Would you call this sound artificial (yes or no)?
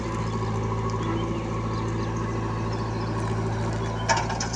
no